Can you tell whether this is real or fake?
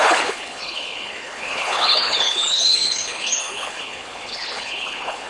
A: fake